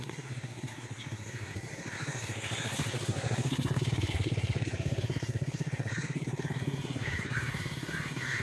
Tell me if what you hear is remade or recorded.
remade